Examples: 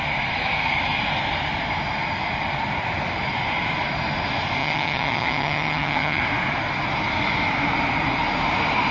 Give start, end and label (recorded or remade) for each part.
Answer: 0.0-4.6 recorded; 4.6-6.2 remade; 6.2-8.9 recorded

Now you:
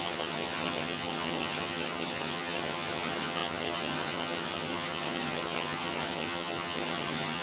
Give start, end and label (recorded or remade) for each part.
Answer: 0.0-7.4 remade

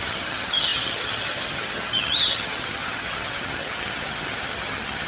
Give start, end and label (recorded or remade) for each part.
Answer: 0.0-5.1 remade

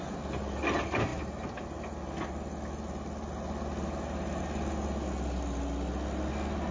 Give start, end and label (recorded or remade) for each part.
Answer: 0.0-6.7 recorded